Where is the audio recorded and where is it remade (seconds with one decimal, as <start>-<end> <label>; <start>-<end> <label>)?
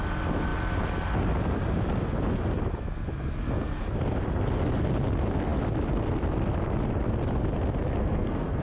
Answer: 0.0-8.0 recorded; 8.0-8.6 remade